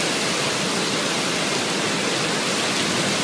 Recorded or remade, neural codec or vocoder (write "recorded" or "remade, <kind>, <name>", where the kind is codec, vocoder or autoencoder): recorded